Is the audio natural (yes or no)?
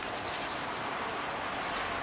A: yes